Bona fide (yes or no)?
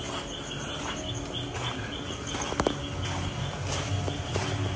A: yes